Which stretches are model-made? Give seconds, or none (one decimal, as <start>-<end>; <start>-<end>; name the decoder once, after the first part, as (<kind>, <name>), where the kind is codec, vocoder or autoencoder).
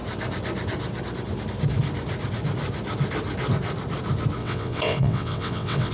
4.4-5.9 (vocoder, WaveNeXt)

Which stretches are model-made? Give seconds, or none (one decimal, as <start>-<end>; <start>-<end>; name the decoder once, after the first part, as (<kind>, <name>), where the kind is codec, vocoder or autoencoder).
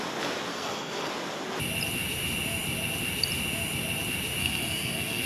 0.5-1.1 (codec, SNAC); 4.4-5.3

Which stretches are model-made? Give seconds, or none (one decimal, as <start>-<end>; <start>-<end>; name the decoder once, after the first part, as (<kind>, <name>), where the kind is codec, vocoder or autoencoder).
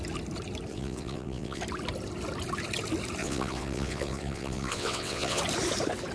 0.7-1.6 (vocoder, WaveNeXt); 3.2-5.4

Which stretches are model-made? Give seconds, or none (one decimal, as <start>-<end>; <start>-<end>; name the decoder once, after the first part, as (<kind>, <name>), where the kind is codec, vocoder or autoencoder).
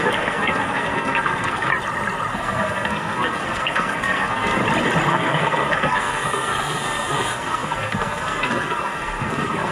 0.0-1.7 (codec, SNAC); 2.3-4.6; 5.1-9.7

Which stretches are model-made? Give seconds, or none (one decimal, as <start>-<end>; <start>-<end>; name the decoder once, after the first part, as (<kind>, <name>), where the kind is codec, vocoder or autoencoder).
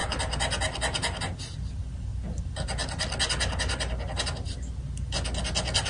none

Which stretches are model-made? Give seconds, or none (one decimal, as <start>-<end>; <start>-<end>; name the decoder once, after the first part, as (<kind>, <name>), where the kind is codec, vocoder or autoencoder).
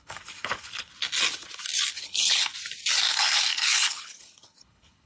0.0-0.9 (codec, HILCodec); 1.9-2.5; 3.0-5.1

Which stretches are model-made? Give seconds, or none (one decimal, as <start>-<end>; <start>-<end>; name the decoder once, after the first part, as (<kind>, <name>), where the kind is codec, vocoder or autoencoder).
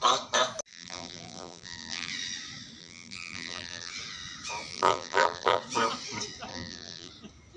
0.7-2.1 (vocoder, BigVGAN v2); 2.8-3.9; 4.7-5.6; 6.5-7.1